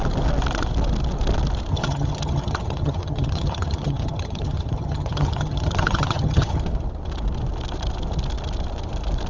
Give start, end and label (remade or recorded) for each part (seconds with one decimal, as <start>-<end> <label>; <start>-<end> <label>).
0.0-1.7 recorded; 1.7-6.6 remade; 6.6-9.3 recorded